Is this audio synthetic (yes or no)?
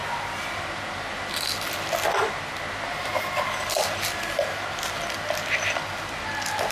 no